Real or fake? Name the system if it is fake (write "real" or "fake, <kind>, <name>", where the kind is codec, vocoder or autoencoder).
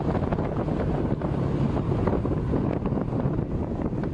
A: fake, vocoder, BigVGAN v2